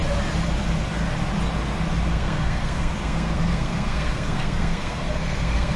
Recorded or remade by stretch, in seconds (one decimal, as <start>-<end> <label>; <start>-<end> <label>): 0.0-2.1 recorded; 2.1-5.8 remade